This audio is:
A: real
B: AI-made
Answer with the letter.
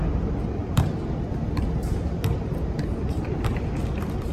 A